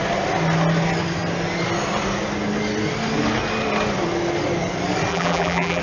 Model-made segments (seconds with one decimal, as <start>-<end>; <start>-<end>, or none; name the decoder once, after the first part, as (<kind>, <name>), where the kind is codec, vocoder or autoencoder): 5.1-5.8 (vocoder, BigVGAN v2)